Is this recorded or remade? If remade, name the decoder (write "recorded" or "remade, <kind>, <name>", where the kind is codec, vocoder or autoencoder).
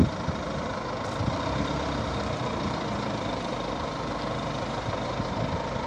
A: remade, vocoder, BigVGAN v2